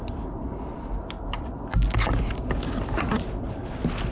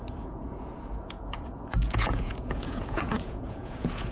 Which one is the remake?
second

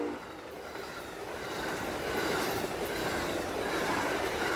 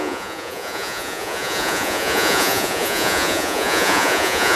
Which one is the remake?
second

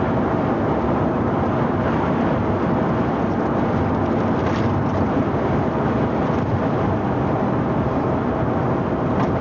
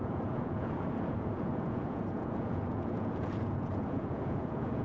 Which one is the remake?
second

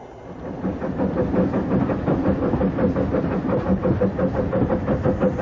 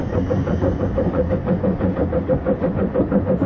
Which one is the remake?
second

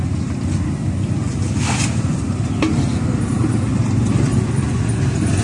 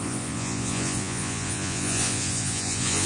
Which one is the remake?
second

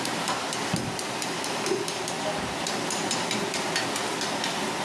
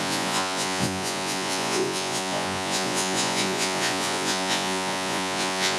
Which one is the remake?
second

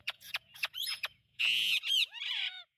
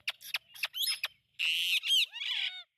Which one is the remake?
first